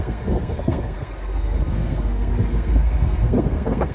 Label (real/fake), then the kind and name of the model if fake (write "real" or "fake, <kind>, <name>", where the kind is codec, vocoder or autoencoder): fake, codec, SNAC